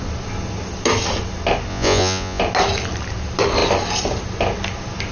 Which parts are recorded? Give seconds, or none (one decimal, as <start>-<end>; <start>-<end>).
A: 0.0-1.7; 2.4-5.1